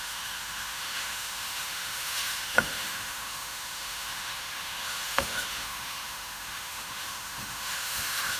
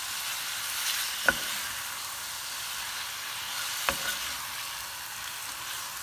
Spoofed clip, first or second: first